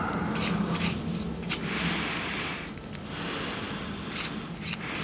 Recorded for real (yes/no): yes